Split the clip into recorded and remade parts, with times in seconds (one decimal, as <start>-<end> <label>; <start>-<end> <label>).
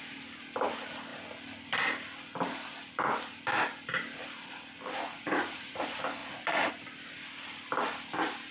0.0-5.1 recorded; 5.1-5.8 remade; 5.8-6.2 recorded; 6.2-6.7 remade; 6.7-8.5 recorded